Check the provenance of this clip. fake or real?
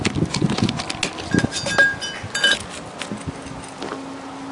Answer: real